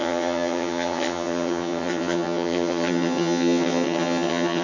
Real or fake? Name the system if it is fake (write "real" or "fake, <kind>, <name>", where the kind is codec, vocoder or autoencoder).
fake, vocoder, HiFi-GAN